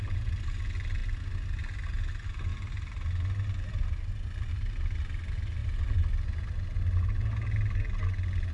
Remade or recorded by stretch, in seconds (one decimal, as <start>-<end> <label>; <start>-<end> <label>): 0.0-8.5 recorded